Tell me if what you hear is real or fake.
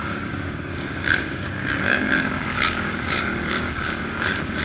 fake